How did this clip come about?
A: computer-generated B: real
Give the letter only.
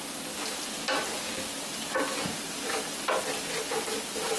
B